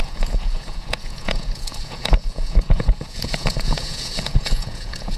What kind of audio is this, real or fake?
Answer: fake